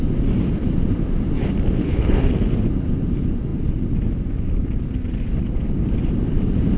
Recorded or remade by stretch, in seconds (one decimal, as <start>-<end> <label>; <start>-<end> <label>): 0.0-1.8 recorded; 1.8-2.3 remade; 2.3-6.8 recorded